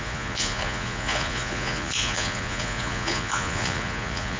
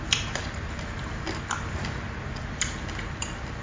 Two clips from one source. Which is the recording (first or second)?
second